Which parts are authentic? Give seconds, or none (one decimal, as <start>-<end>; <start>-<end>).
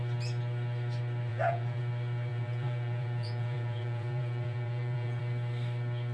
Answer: 0.0-1.3; 1.8-2.3; 5.2-6.1